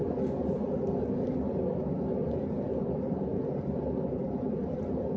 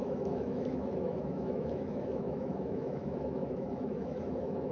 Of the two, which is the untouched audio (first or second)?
first